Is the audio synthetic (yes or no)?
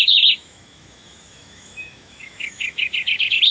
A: yes